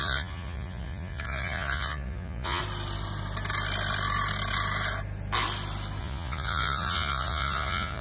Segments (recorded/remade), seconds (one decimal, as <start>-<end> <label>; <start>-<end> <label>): 0.0-2.6 remade; 2.6-6.0 recorded; 6.0-8.0 remade